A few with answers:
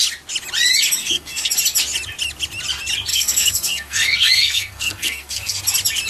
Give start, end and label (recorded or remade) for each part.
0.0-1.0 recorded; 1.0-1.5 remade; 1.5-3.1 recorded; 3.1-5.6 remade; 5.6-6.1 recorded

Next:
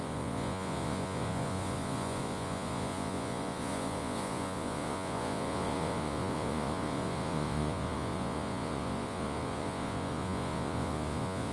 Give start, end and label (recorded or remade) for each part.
0.0-11.5 remade

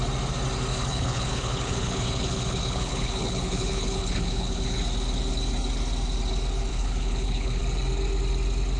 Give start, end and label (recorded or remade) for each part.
0.0-0.7 recorded; 0.7-4.8 remade; 4.8-6.7 recorded; 6.7-7.6 remade; 7.6-8.8 recorded